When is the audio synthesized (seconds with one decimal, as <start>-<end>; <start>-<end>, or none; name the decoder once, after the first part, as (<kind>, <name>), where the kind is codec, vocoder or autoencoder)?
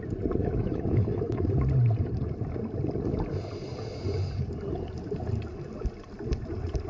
0.4-1.5 (autoencoder, DAC-VAE)